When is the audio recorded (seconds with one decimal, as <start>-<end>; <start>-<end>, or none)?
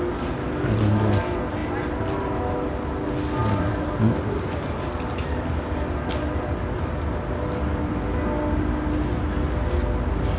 0.0-10.4